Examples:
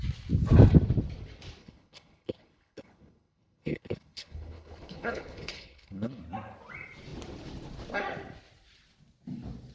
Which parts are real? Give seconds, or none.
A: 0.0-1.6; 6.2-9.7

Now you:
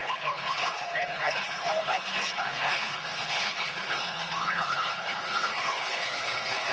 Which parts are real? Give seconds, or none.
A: none

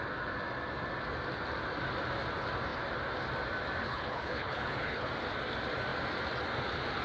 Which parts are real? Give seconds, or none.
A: 0.0-3.8; 5.1-7.0